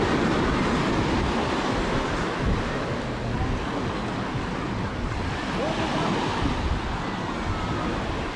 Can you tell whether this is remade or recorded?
recorded